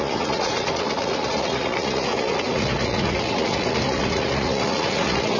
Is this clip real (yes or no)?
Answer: no